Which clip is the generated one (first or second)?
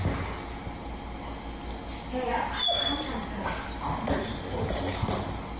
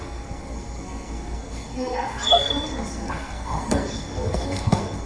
second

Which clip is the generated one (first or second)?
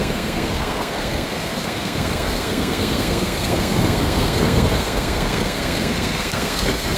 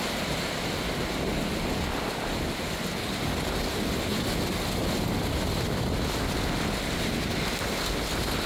first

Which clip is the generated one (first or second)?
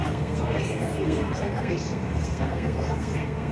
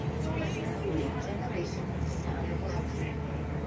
first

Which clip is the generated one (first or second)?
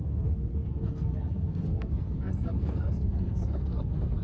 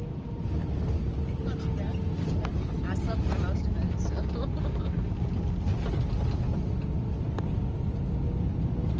first